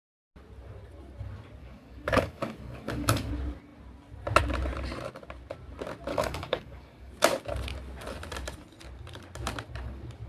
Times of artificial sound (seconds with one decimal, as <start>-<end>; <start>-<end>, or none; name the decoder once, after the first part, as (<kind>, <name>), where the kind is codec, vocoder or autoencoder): 1.6-3.3 (codec, DAC); 6.1-7.1